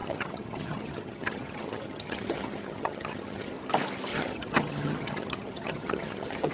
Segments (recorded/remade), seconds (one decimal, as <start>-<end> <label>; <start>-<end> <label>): 0.0-3.5 remade; 3.5-4.1 recorded; 4.1-6.5 remade